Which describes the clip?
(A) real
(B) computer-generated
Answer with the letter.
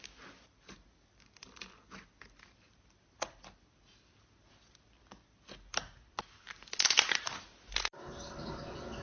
A